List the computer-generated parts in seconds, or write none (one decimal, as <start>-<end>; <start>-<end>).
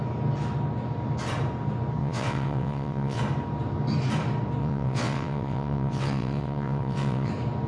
2.0-3.2; 4.6-7.3